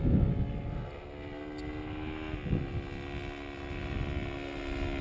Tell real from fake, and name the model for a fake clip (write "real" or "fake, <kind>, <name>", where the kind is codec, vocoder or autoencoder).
real